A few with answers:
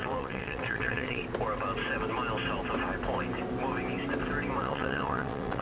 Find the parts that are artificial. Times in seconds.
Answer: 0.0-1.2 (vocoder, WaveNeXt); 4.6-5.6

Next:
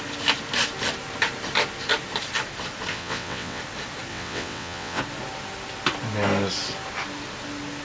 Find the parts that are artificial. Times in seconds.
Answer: 2.9-3.6 (vocoder, WaveNeXt); 4.1-5.0

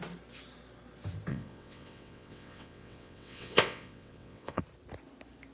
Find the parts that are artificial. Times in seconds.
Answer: 1.3-4.6 (vocoder, WaveNeXt)

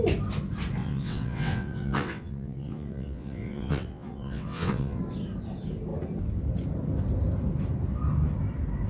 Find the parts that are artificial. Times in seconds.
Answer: 0.8-5.0 (vocoder, WaveNeXt)

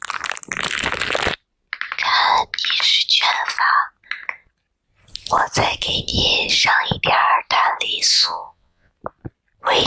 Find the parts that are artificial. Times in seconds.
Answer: 8.1-8.9 (vocoder, WaveNeXt)

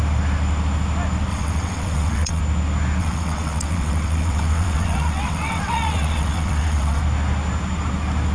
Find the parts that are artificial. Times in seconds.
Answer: 1.3-2.4 (vocoder, WaveNeXt); 3.0-7.0

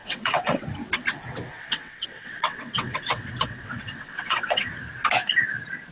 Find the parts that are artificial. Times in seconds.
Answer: 0.0-0.6 (vocoder, WaveNeXt); 1.5-4.7

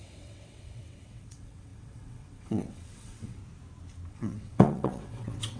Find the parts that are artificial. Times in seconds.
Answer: 0.0-3.4 (vocoder, WaveNeXt); 4.1-5.6